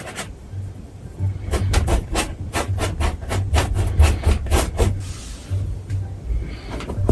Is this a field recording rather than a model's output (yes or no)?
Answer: yes